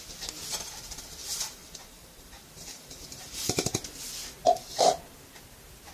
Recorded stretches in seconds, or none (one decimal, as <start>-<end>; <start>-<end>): 0.0-1.2; 3.8-5.9